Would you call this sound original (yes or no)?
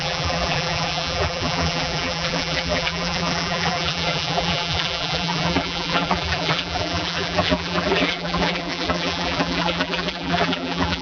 no